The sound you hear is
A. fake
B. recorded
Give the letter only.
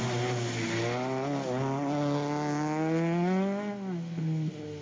B